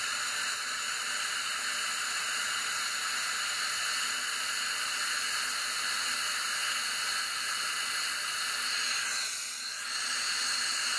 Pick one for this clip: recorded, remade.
recorded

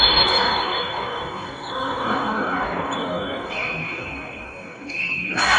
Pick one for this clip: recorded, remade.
remade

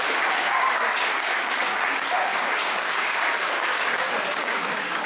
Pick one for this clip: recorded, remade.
remade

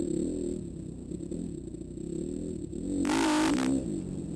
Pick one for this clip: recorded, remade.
recorded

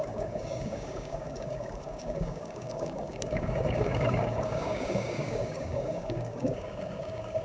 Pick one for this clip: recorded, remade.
remade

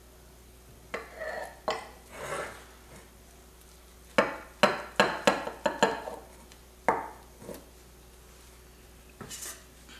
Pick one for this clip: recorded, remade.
recorded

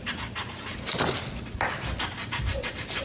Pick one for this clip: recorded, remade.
recorded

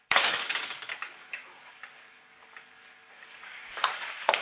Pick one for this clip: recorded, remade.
remade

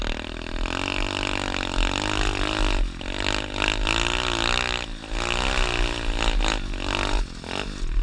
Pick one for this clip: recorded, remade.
recorded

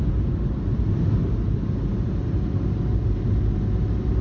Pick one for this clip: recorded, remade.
recorded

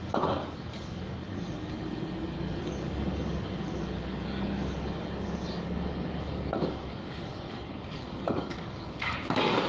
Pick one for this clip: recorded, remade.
remade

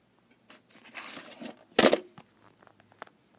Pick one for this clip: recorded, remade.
recorded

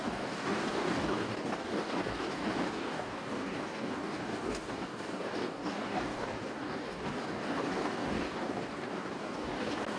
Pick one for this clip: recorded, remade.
remade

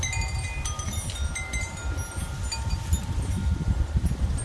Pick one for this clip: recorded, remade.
recorded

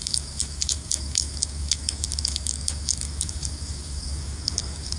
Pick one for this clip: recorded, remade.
remade